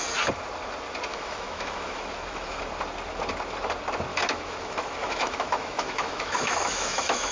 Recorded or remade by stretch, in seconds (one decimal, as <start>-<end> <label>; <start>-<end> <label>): 0.0-1.1 recorded; 1.1-2.6 remade; 2.6-4.1 recorded; 4.1-7.3 remade